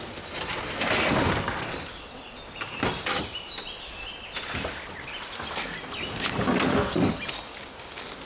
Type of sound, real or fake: real